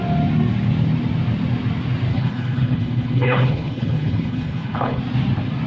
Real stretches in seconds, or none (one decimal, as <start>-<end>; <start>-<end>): 0.0-2.1; 5.0-5.7